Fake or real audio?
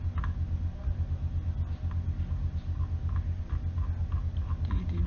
real